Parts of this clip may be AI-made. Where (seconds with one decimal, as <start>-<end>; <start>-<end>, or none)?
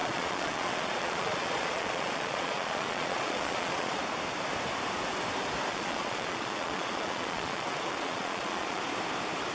0.0-4.0; 5.7-8.8